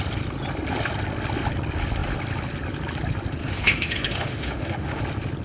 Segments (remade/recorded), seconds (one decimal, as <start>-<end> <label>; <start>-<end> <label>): 0.0-3.4 recorded; 3.4-5.0 remade; 5.0-5.4 recorded